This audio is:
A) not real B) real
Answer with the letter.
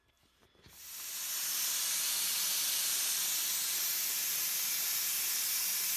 B